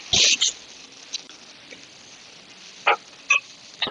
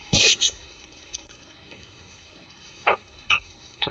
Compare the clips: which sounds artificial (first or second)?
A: second